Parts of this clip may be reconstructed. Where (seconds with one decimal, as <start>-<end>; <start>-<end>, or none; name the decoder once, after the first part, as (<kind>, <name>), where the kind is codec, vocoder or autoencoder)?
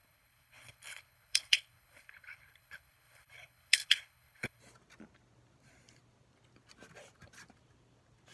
0.0-4.6 (codec, HILCodec)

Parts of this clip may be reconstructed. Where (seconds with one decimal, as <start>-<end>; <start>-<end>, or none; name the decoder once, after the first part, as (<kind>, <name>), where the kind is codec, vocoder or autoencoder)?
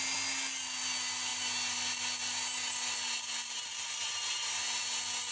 none